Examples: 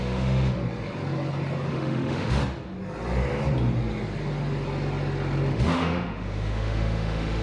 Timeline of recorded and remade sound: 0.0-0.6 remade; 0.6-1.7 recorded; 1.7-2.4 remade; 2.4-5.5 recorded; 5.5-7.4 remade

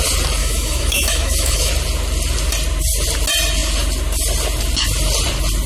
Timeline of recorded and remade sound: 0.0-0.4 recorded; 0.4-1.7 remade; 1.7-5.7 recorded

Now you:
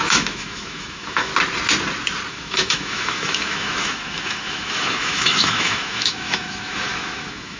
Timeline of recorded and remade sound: 0.0-1.3 remade; 1.3-2.3 recorded; 2.3-7.6 remade